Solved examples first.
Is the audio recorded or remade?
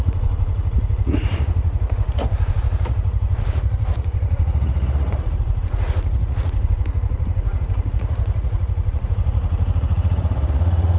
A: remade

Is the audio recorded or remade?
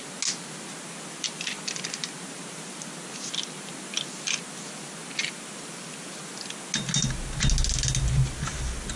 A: recorded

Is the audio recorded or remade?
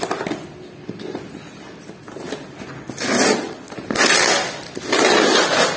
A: recorded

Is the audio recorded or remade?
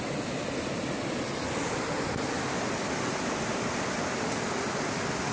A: recorded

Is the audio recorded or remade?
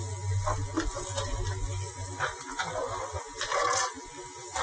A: recorded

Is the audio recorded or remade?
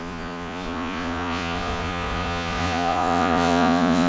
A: remade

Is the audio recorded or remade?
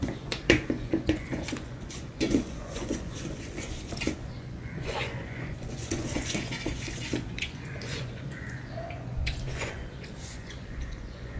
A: remade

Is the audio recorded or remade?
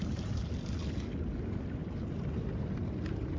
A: recorded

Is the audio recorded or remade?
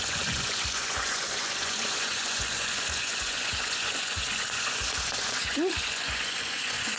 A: remade